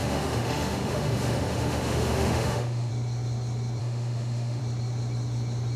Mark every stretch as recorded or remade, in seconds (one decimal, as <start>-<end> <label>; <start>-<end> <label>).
0.0-2.9 remade; 2.9-3.8 recorded; 3.8-4.6 remade; 4.6-5.8 recorded